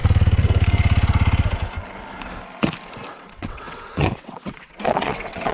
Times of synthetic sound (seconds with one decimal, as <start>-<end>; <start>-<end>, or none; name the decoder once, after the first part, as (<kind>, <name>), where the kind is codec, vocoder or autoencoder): 3.1-5.5 (vocoder, WaveNeXt)